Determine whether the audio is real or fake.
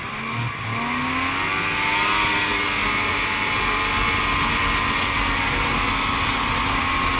real